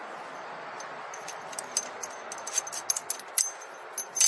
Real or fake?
real